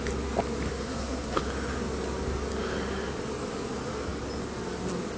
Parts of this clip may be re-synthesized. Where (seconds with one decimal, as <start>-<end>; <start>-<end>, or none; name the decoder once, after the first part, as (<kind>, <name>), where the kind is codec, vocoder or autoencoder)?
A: 0.7-1.4 (codec, SNAC)